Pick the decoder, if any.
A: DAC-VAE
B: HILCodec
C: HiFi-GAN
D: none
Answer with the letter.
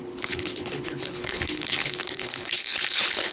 B